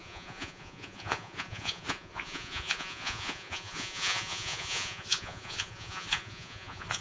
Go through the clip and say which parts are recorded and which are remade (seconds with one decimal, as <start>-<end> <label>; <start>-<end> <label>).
0.0-7.0 remade